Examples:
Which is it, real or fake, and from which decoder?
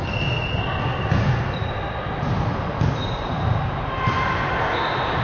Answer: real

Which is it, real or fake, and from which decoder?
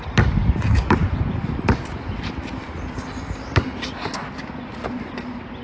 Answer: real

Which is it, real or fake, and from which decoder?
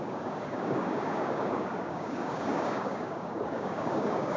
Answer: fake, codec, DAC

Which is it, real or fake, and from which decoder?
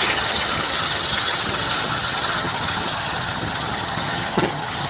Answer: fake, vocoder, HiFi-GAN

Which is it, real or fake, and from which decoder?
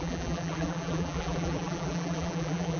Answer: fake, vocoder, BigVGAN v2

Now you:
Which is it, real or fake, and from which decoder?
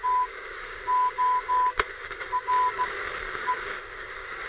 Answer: fake, codec, DAC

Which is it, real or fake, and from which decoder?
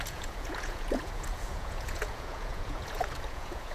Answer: fake, vocoder, Vocos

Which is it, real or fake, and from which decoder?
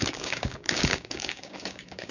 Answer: fake, codec, DAC